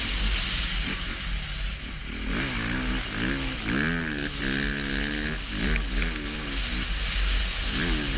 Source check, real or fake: real